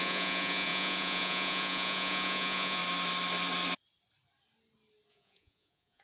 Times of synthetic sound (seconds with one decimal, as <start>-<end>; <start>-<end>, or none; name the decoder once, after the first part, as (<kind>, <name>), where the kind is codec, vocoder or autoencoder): 0.0-2.8 (vocoder, Vocos); 5.1-6.0